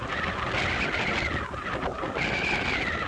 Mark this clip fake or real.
real